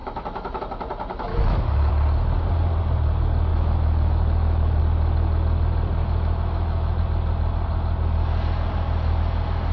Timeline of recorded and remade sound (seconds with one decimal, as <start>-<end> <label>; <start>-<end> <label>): 0.0-0.6 remade; 0.6-1.3 recorded; 1.3-1.9 remade; 1.9-3.5 recorded; 3.5-4.8 remade; 4.8-6.0 recorded; 6.0-7.0 remade; 7.0-9.7 recorded

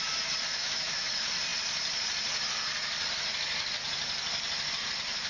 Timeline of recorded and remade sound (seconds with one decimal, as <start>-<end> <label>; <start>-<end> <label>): 0.0-0.6 recorded; 0.6-1.1 remade; 1.1-5.3 recorded

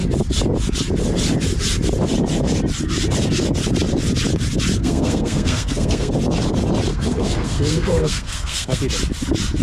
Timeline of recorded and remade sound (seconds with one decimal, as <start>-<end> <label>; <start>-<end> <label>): 0.0-4.8 recorded; 4.8-6.1 remade; 6.1-6.9 recorded; 6.9-8.8 remade; 8.8-9.6 recorded

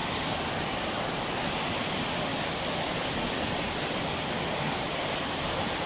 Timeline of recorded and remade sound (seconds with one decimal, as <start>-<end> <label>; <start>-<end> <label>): 0.0-2.3 recorded; 2.3-5.9 remade

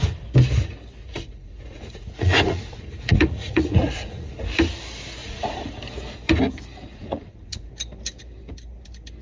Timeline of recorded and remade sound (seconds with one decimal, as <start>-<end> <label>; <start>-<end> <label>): 0.0-1.0 recorded; 1.0-4.4 remade; 4.4-5.2 recorded; 5.2-5.8 remade; 5.8-6.9 recorded; 6.9-7.7 remade; 7.7-9.2 recorded

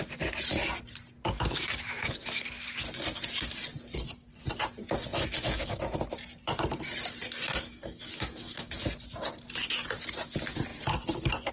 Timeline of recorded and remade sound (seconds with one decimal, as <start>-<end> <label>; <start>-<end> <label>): 0.0-5.1 recorded; 5.1-5.8 remade; 5.8-7.7 recorded; 7.7-8.8 remade; 8.8-11.5 recorded